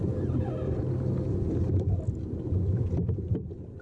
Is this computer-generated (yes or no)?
no